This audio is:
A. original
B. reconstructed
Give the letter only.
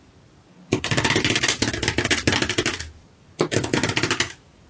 A